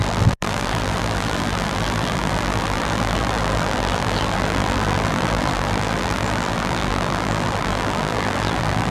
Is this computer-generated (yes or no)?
yes